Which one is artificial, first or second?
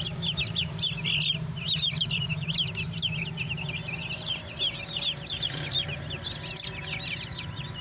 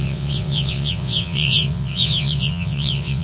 second